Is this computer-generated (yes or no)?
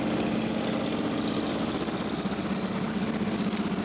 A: no